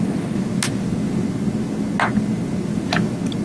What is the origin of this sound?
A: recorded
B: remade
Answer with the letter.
A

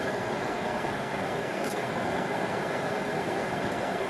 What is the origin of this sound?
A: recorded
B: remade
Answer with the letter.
B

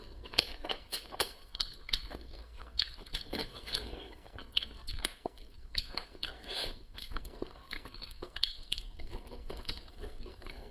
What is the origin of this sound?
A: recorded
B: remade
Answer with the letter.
B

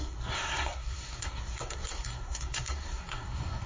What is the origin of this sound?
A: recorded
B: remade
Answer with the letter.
B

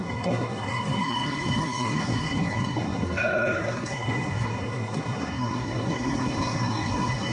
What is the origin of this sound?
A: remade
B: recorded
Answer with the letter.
A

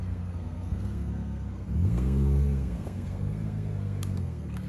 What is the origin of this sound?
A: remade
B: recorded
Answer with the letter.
A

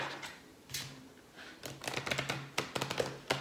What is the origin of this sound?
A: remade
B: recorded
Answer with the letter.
B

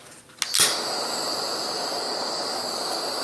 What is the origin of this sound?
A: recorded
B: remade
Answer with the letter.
A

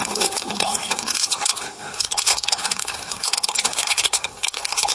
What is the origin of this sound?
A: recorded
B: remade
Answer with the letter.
B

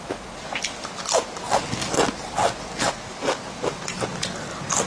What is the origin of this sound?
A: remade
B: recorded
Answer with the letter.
B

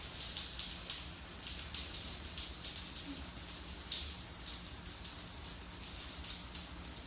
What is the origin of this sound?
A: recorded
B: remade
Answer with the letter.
A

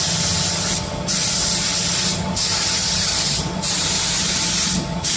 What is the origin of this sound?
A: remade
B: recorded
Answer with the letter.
B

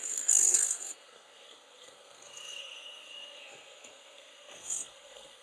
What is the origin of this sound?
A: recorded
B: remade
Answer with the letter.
B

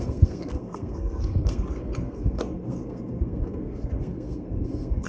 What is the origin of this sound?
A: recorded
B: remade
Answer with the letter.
B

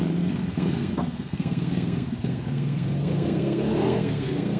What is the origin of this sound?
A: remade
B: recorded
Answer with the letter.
A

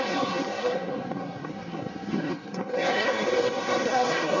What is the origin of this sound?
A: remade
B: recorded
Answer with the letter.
A